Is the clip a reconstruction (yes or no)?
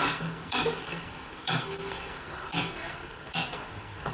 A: yes